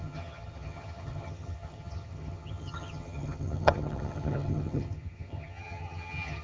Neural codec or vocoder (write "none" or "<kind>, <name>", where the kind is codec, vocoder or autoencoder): vocoder, HiFi-GAN